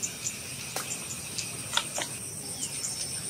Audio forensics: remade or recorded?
recorded